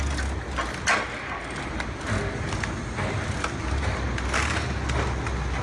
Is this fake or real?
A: real